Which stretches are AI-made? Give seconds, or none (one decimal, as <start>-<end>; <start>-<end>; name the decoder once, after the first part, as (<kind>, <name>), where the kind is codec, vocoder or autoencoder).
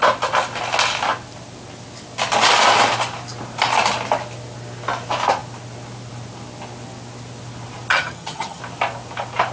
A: 7.9-8.6 (vocoder, HiFi-GAN)